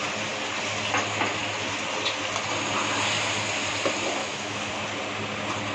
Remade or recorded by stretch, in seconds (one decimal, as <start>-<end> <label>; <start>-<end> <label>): 0.0-4.2 recorded; 4.2-4.7 remade; 4.7-5.7 recorded